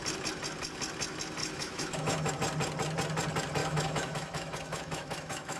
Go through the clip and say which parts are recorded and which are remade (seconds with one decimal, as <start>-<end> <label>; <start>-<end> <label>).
0.0-1.4 recorded; 1.4-2.3 remade; 2.3-3.6 recorded; 3.6-5.6 remade